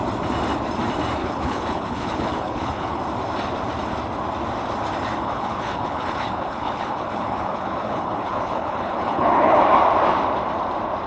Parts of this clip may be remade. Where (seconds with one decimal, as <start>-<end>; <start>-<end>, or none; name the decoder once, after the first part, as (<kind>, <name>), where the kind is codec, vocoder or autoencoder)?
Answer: 1.2-3.0 (codec, HILCodec); 5.2-9.6